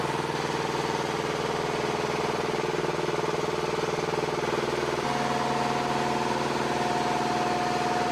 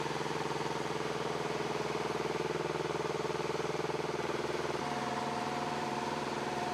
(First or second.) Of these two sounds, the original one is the first